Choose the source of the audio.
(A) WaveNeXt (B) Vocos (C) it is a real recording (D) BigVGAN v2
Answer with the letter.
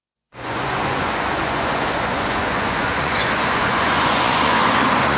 B